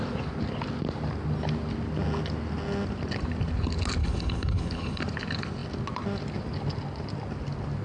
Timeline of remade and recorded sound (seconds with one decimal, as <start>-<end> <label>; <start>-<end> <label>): 0.0-4.0 recorded; 4.0-5.0 remade; 5.0-7.8 recorded